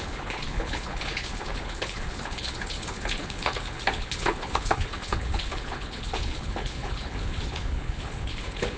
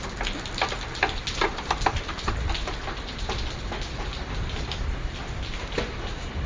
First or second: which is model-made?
first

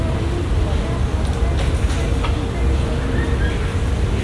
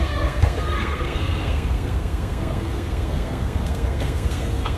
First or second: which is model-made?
second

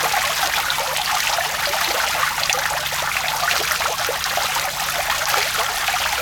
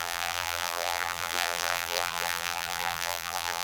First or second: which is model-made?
second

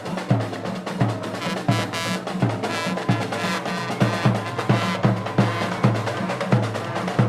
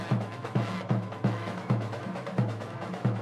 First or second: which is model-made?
second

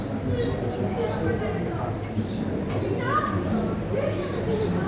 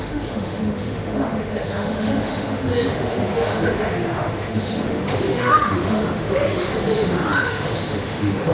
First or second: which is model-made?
second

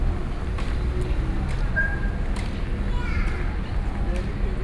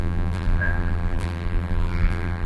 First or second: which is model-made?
second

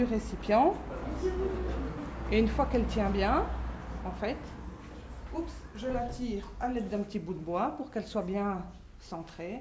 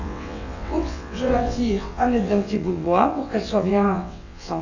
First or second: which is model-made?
second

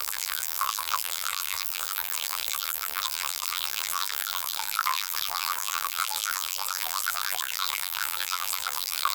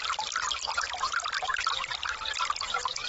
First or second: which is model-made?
first